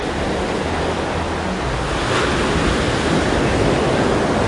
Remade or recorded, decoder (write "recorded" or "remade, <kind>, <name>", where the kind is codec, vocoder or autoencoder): recorded